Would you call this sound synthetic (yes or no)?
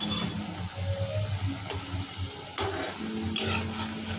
no